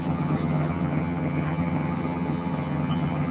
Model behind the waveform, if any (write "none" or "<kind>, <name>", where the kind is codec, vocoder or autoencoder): vocoder, HiFi-GAN